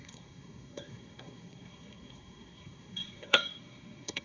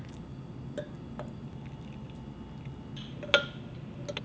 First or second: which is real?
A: second